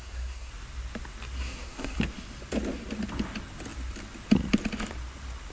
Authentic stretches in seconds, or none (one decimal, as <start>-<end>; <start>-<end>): 0.5-1.4; 2.0-5.5